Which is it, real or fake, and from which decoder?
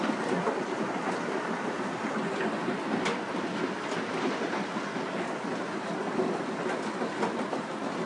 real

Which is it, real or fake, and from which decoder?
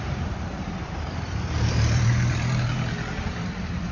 fake, vocoder, BigVGAN v2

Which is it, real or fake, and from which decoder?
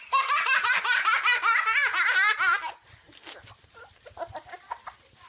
real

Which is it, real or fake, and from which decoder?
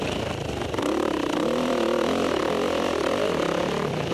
fake, vocoder, BigVGAN v2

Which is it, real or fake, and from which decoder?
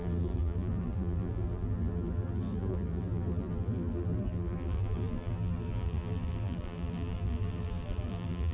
fake, vocoder, BigVGAN v2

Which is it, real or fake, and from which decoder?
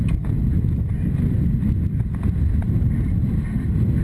real